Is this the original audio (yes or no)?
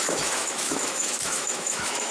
no